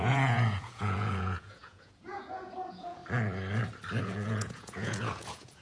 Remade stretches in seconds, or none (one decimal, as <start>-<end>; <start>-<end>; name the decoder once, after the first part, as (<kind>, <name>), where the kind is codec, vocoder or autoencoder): 0.0-3.0 (vocoder, Vocos); 4.0-5.6